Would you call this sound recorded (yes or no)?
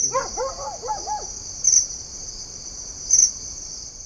no